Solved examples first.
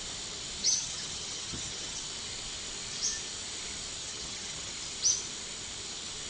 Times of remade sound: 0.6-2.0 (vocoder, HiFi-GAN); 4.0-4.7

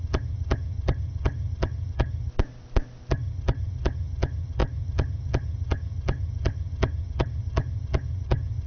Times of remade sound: 0.0-2.3 (vocoder, HiFi-GAN); 3.1-8.7